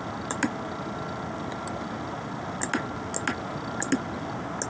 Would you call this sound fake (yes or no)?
no